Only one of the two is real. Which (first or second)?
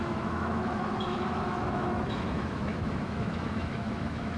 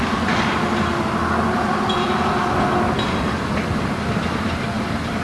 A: second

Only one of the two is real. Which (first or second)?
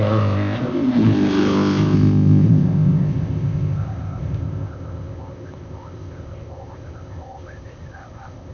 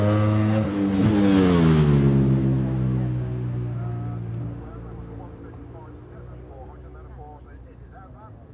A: second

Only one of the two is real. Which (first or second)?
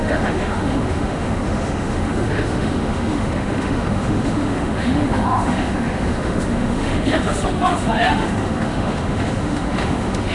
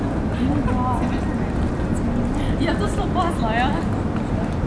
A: second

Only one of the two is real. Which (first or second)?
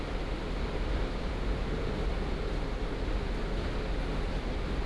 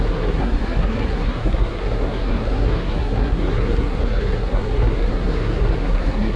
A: first